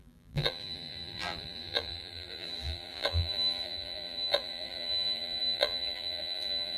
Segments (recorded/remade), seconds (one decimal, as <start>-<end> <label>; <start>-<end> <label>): 0.0-6.8 remade